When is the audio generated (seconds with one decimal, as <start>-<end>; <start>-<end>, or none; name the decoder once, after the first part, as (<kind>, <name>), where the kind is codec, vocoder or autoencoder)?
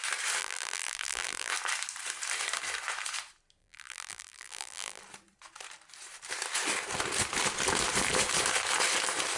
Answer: 0.4-1.5 (vocoder, BigVGAN v2); 3.6-5.0